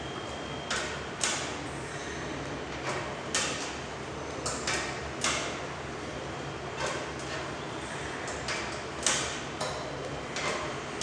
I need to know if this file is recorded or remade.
recorded